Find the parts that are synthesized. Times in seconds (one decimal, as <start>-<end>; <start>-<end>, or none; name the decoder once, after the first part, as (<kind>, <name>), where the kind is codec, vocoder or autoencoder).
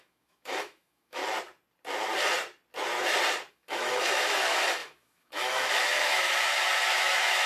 0.0-1.2 (autoencoder, DAC-VAE); 3.5-7.5